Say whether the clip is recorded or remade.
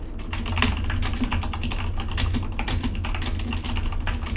recorded